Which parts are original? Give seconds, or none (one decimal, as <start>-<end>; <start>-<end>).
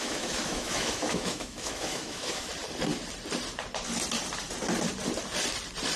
2.5-6.0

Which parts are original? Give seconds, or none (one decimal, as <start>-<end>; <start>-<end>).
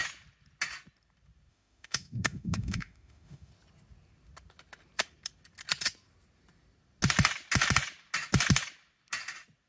0.0-1.5; 3.5-9.7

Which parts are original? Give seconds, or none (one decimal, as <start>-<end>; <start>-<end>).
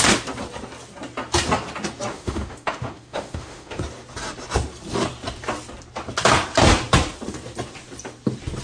0.0-2.1; 3.8-8.6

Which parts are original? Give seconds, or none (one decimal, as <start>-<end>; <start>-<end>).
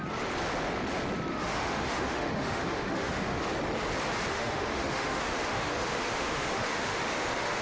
0.0-1.3; 3.4-4.3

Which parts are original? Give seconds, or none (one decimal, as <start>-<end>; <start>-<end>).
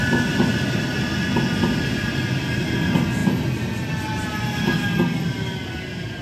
0.0-6.2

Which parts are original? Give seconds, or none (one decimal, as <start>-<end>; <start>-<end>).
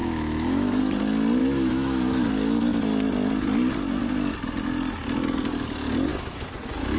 0.8-1.4; 2.3-6.1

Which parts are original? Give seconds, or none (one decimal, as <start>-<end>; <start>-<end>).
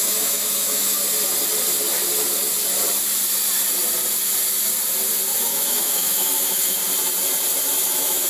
1.0-5.4; 6.8-7.9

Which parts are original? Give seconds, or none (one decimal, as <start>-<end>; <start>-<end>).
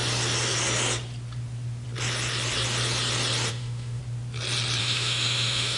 0.0-3.5; 4.0-4.8